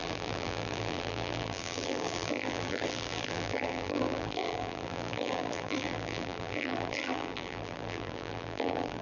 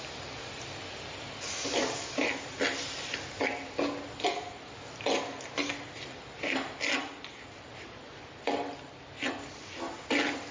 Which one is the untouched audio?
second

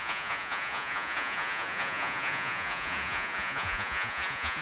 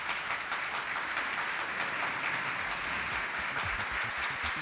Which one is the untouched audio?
second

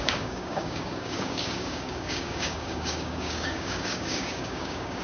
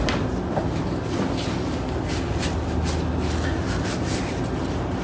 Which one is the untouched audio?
second